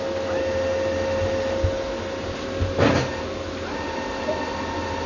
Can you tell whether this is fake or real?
real